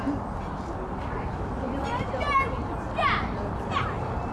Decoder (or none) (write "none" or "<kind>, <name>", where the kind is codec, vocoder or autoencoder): none